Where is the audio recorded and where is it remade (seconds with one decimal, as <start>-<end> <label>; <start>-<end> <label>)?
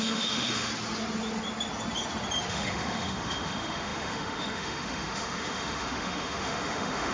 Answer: 0.0-0.7 remade; 0.7-2.5 recorded; 2.5-7.1 remade